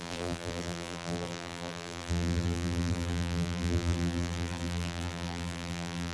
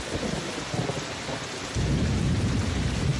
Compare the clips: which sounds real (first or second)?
second